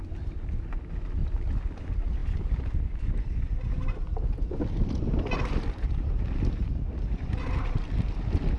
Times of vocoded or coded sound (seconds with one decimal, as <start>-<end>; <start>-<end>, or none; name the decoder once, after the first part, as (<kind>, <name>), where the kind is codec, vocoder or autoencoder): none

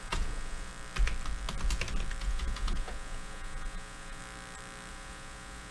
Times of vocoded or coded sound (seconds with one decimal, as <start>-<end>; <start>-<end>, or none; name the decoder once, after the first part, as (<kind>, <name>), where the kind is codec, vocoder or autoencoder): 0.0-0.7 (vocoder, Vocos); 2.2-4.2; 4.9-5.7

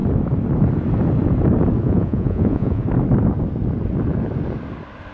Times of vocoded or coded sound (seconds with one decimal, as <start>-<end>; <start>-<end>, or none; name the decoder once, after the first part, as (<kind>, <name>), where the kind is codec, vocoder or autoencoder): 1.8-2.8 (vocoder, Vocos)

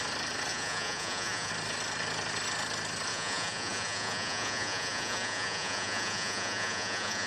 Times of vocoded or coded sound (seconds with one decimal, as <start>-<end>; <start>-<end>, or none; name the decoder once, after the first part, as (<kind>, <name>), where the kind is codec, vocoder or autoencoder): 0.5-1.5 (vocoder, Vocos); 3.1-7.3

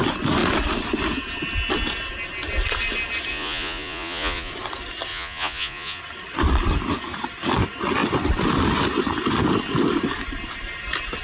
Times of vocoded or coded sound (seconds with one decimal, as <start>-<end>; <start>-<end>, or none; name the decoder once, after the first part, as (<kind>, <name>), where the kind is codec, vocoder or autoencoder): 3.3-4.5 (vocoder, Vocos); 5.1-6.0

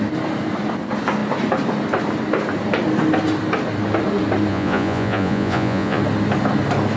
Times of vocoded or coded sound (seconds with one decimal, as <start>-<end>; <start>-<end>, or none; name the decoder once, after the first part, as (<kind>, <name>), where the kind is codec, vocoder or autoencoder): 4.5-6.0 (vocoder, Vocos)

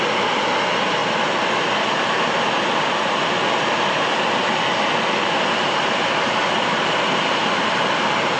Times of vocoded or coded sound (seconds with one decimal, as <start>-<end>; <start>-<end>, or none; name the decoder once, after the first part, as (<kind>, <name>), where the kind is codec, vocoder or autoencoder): none

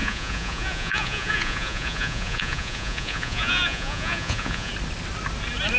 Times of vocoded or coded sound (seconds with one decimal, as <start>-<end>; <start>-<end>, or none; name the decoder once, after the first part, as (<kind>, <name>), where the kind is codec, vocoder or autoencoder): 0.0-4.7 (vocoder, Vocos)